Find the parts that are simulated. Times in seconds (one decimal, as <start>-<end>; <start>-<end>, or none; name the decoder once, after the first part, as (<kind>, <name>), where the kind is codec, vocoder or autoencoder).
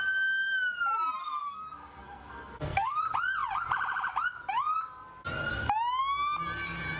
1.2-3.0 (codec, SNAC)